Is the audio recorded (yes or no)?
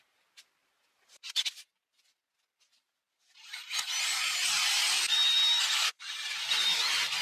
yes